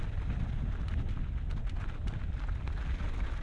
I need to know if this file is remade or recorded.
recorded